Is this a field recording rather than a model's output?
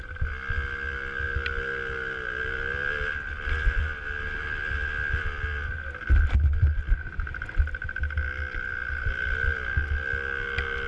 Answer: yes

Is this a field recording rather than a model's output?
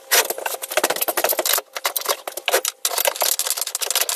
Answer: yes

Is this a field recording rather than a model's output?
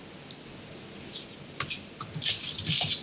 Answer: yes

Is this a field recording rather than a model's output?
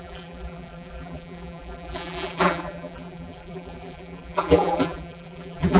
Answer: no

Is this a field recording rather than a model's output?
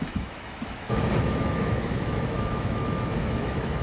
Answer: no